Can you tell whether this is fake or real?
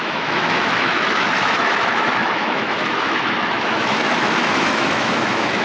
fake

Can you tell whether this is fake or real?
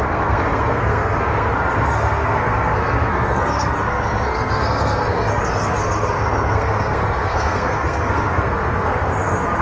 fake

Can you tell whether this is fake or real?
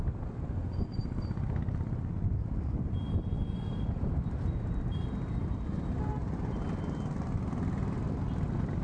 real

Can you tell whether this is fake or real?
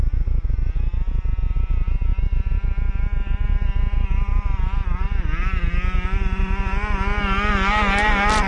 real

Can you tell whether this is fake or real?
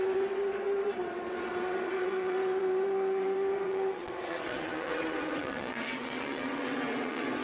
fake